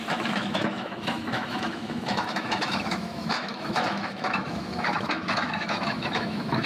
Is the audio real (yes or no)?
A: no